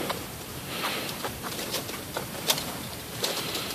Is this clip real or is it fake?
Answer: fake